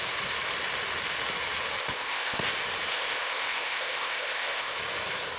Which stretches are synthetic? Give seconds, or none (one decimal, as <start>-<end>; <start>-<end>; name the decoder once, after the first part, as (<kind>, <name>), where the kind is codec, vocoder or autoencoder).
1.8-2.4 (codec, ZipCodec); 2.9-4.8

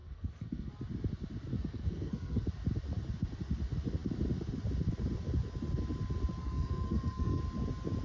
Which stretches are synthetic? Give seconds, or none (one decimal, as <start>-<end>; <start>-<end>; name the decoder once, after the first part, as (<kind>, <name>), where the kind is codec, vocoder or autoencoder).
0.0-0.7 (codec, SNAC); 1.5-2.5; 6.4-7.4

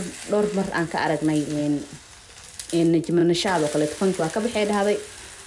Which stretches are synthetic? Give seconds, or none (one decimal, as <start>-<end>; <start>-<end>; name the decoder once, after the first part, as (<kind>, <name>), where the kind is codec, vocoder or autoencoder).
none

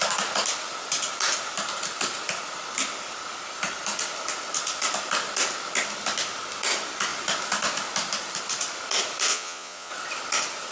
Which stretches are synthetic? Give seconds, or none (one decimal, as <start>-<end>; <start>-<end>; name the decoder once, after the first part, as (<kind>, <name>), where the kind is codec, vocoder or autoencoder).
9.3-9.9 (vocoder, Vocos)

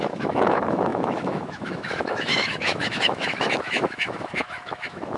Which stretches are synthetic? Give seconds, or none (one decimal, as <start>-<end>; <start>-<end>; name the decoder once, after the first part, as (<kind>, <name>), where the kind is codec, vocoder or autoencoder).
0.0-5.2 (autoencoder, DAC-VAE)

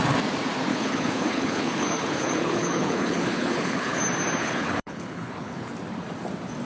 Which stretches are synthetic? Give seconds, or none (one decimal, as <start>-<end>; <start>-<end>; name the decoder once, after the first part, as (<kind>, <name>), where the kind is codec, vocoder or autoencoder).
0.7-4.0 (codec, HILCodec); 4.4-5.7

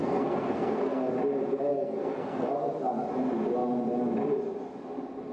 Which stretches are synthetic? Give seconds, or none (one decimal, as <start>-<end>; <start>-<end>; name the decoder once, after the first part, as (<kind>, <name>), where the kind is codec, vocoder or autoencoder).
0.0-1.1 (codec, SNAC); 1.7-2.5

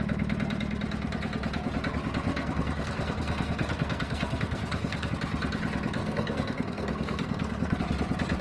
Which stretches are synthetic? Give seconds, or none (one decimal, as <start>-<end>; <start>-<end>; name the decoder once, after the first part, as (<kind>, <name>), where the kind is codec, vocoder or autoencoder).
2.3-5.1 (codec, SNAC); 6.0-7.8